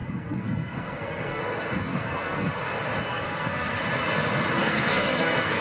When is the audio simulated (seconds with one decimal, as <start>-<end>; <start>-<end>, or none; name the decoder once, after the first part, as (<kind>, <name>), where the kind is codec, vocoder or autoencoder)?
0.0-1.4 (codec, SNAC); 1.9-2.5; 3.1-3.8; 4.6-5.6